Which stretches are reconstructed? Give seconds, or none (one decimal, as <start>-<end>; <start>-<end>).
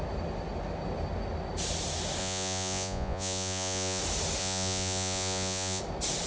2.2-4.0; 4.4-5.8